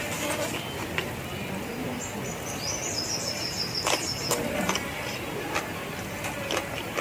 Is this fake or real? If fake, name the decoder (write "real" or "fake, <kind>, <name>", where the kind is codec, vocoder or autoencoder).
real